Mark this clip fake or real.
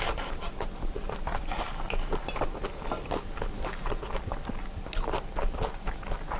real